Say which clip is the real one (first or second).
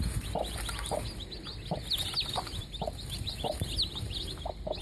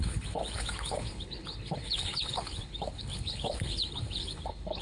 first